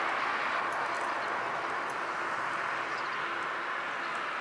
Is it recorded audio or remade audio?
recorded